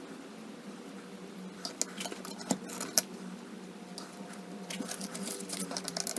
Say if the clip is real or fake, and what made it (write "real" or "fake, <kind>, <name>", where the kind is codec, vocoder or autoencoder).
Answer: real